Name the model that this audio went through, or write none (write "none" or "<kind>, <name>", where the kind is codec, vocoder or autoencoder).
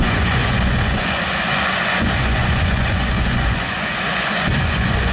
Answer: vocoder, Vocos